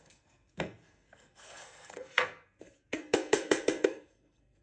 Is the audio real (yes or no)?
no